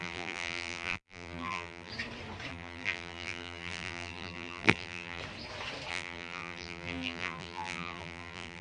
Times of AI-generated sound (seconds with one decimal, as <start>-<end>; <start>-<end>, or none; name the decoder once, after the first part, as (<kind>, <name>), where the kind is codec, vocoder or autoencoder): 0.0-1.9 (vocoder, BigVGAN v2); 2.5-5.2; 5.9-8.6